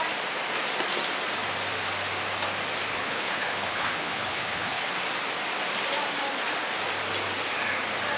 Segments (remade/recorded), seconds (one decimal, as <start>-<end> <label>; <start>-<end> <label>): 0.0-2.9 recorded; 2.9-4.9 remade; 4.9-8.2 recorded